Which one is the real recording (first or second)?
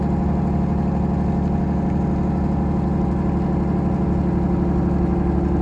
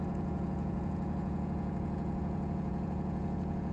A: first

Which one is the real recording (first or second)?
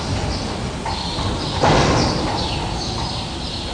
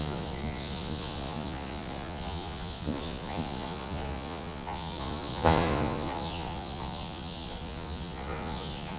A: first